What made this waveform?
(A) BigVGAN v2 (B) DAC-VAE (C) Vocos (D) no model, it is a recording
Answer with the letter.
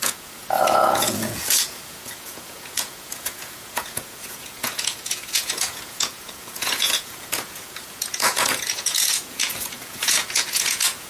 C